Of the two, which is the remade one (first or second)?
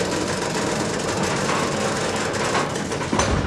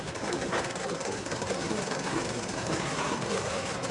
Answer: second